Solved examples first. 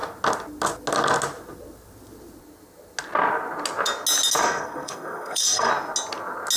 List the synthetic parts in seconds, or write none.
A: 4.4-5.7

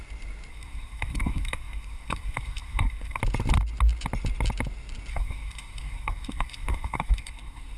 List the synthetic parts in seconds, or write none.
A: 0.5-3.2; 5.1-7.8

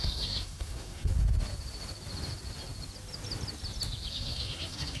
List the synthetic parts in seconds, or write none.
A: 0.0-1.1; 4.1-5.0

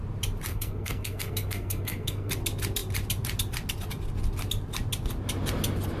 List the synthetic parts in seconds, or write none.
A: 0.5-2.3